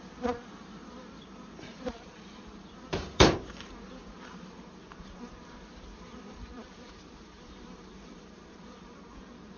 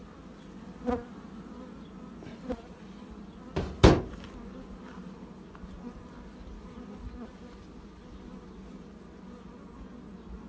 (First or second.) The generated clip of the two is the first